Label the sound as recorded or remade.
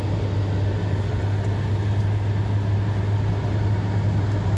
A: recorded